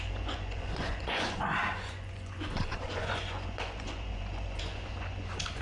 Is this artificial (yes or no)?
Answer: yes